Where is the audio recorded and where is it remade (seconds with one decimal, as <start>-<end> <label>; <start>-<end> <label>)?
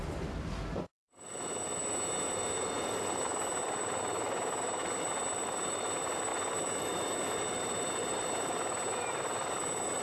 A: 0.0-10.0 recorded